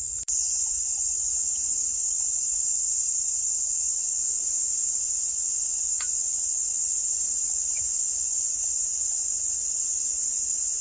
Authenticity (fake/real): fake